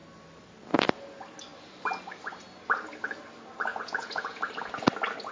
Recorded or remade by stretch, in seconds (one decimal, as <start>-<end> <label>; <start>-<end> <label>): 0.0-3.7 recorded; 3.7-4.4 remade; 4.4-5.3 recorded